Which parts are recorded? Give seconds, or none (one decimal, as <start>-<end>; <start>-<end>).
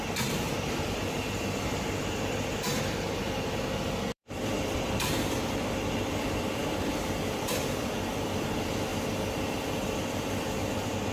8.9-10.1